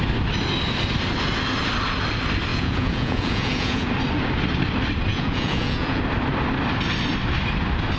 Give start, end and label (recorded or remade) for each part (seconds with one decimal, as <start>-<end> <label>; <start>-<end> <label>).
0.0-2.5 recorded; 2.5-3.9 remade; 3.9-5.1 recorded; 5.1-6.0 remade; 6.0-8.0 recorded